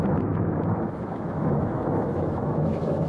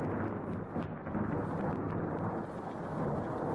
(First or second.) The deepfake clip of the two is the first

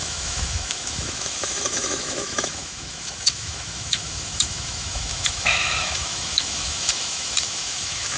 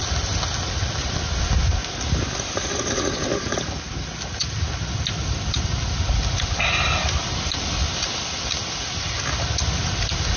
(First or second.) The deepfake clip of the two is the first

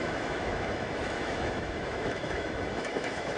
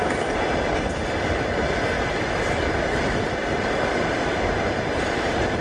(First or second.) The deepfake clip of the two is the first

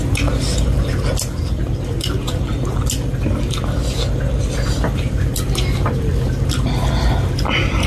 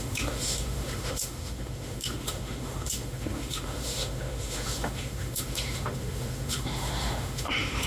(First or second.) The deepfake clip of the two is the second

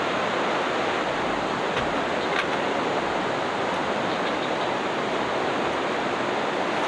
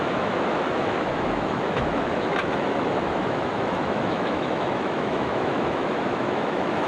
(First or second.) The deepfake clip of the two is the second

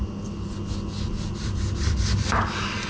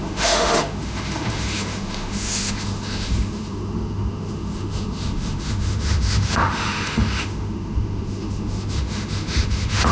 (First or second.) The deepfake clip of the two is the second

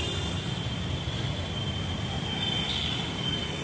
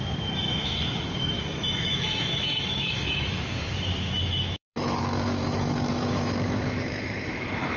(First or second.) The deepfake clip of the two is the second